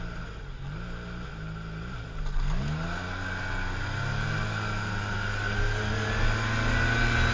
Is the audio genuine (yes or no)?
yes